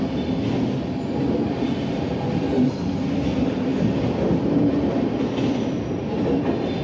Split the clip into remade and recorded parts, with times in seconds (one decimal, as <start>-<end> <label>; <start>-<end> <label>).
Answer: 0.0-6.8 recorded